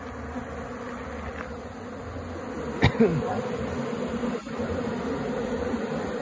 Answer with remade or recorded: recorded